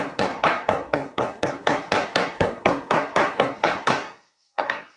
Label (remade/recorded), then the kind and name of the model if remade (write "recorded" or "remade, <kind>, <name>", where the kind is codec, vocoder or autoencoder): remade, codec, SNAC